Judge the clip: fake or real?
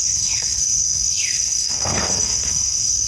fake